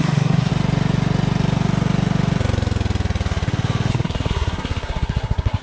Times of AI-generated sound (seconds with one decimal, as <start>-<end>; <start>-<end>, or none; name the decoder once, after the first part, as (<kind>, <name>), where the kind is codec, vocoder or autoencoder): 0.0-0.5 (codec, SNAC); 3.9-5.6